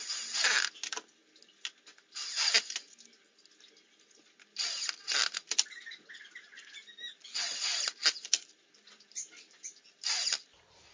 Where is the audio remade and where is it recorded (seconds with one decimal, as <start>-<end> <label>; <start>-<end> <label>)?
0.0-7.7 recorded; 7.7-10.9 remade